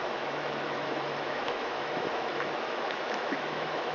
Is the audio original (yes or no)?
no